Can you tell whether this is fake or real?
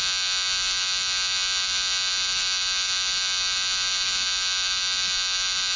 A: real